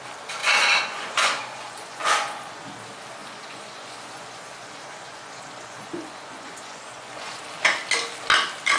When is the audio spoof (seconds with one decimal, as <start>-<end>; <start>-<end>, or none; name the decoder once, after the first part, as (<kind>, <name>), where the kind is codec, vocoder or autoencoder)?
0.4-2.6 (vocoder, Vocos); 3.2-7.4